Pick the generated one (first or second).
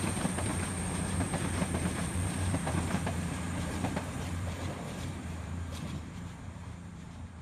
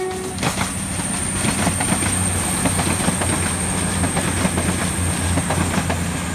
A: first